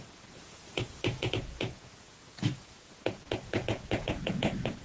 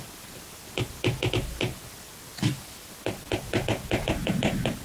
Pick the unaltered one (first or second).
second